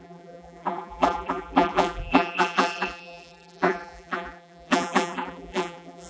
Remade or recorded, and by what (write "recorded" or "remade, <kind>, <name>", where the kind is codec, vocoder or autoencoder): remade, vocoder, BigVGAN v2